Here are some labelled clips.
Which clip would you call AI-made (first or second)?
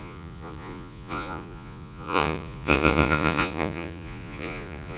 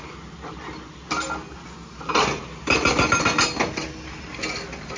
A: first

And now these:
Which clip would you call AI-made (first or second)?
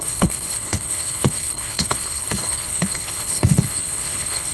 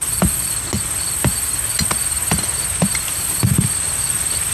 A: first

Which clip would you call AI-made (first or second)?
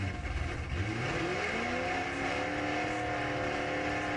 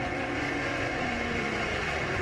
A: second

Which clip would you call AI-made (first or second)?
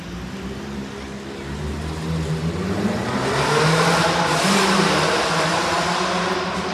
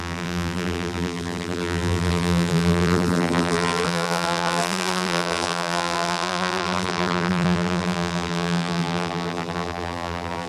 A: second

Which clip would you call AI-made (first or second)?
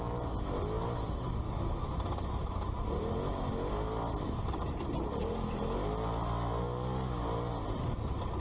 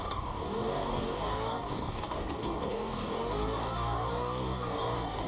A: second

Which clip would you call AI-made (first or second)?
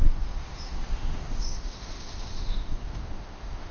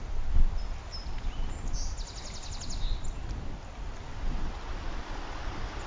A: first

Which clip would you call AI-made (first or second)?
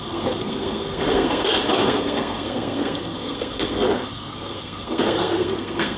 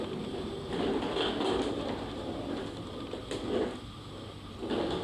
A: first